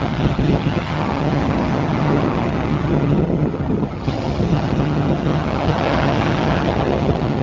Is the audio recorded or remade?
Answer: remade